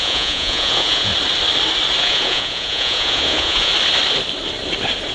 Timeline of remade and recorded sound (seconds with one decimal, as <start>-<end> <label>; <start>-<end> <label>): 0.0-1.1 remade; 1.1-2.0 recorded; 2.0-3.7 remade; 3.7-5.1 recorded